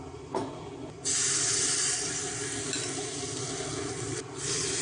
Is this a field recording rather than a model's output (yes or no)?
yes